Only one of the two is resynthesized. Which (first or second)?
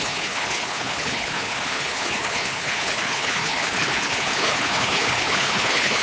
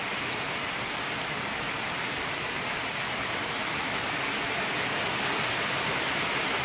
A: first